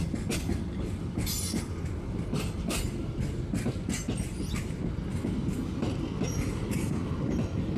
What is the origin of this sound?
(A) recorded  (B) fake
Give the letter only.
A